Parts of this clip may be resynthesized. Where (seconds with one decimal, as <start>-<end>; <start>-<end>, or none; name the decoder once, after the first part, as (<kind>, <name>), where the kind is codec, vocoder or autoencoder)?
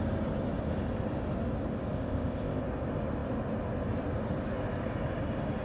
1.9-2.6 (codec, ZipCodec)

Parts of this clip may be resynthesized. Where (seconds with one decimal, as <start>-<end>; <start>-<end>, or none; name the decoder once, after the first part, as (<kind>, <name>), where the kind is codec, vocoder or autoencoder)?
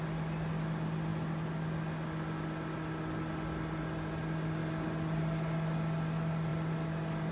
none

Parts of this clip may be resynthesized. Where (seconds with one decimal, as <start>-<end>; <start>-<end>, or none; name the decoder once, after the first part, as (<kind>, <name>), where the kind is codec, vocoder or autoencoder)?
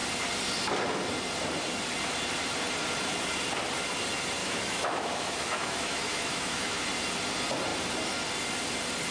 4.4-6.8 (autoencoder, DAC-VAE)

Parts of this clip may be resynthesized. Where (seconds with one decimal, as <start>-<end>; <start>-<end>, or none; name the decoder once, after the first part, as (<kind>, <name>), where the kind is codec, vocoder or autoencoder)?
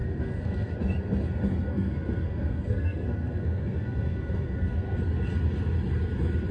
0.0-0.7 (codec, SNAC); 1.7-5.0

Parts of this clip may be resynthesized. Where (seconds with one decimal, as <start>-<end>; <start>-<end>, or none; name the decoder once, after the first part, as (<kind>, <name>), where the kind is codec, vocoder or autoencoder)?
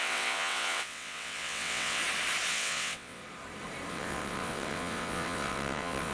0.0-2.0 (vocoder, WaveNeXt); 2.5-3.2; 3.9-6.1